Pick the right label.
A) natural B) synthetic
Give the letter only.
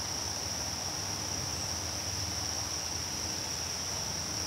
A